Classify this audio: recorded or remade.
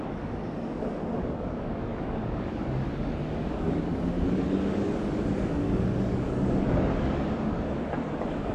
remade